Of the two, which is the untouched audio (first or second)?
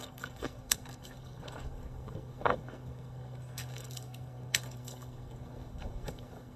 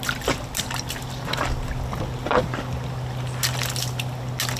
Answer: second